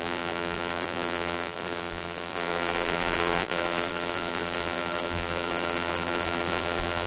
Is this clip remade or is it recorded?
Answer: remade